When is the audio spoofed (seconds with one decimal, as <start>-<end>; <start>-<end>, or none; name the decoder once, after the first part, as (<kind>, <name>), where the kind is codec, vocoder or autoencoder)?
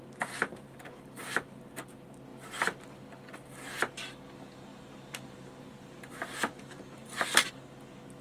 0.5-1.2 (vocoder, BigVGAN v2); 4.7-7.5